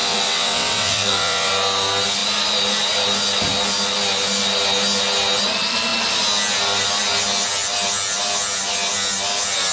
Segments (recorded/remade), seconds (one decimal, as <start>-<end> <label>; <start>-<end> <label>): 0.0-1.5 remade; 1.5-9.7 recorded